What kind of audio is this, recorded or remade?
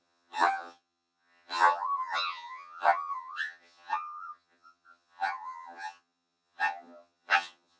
remade